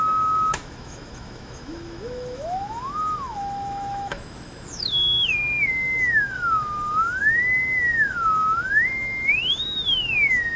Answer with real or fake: fake